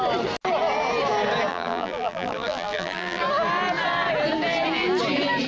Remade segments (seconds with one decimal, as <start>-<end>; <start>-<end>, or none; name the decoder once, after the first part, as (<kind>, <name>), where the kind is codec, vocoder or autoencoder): 1.5-3.2 (vocoder, BigVGAN v2)